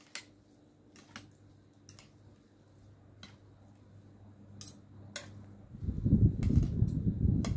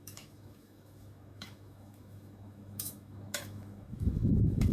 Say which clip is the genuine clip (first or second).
first